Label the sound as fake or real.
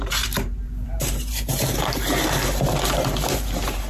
fake